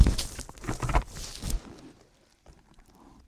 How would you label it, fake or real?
real